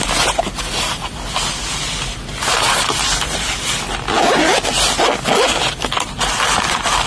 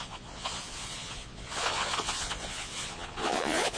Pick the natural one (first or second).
first